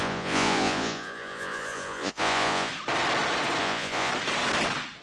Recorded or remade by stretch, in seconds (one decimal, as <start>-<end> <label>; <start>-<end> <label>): 0.0-2.7 remade; 2.7-3.6 recorded; 3.6-4.1 remade; 4.1-5.0 recorded